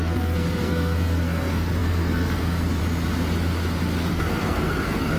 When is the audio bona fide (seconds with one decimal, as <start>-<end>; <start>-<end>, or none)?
2.8-4.1

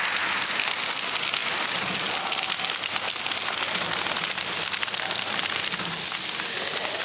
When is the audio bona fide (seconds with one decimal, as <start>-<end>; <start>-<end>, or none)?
0.0-7.0